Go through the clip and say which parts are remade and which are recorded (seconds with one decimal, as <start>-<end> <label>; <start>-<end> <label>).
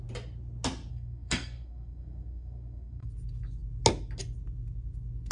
0.0-0.9 recorded; 0.9-3.1 remade; 3.1-5.3 recorded